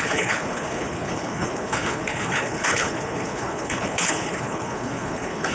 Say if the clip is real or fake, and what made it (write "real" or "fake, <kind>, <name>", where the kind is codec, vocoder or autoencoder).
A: fake, codec, HILCodec